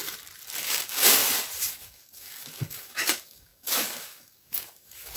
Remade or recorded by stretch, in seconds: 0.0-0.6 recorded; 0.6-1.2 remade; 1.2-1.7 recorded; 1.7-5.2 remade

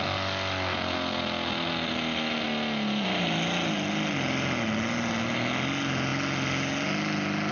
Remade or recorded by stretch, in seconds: 0.0-7.5 recorded

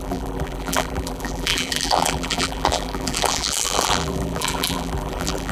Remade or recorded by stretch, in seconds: 0.0-5.5 remade

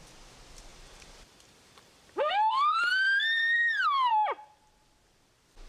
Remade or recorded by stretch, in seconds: 0.0-0.7 recorded; 0.7-2.9 remade; 2.9-5.7 recorded

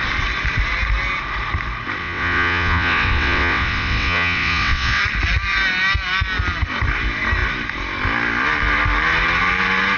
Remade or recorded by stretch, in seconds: 0.0-2.0 recorded; 2.0-5.0 remade; 5.0-10.0 recorded

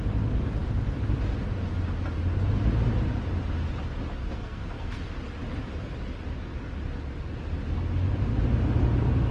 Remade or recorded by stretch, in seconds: 0.0-4.2 recorded; 4.2-5.0 remade; 5.0-9.3 recorded

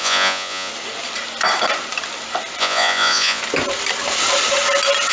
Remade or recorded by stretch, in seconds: 0.0-0.7 remade; 0.7-2.6 recorded; 2.6-3.4 remade; 3.4-5.1 recorded